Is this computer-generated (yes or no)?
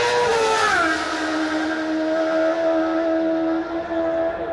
no